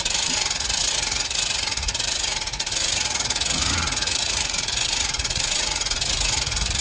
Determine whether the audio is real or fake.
fake